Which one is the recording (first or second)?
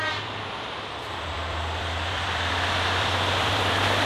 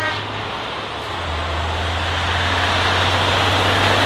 second